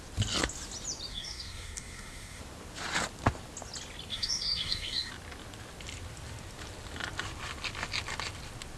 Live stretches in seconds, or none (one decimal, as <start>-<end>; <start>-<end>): 0.0-1.1; 2.4-4.1; 5.1-8.8